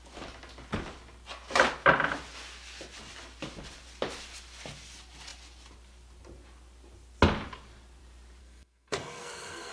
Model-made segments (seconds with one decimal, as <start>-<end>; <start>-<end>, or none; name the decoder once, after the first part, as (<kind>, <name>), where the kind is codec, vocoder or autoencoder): 8.4-9.7 (codec, SNAC)